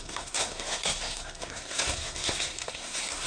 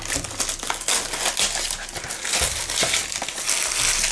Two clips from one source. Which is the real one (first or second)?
second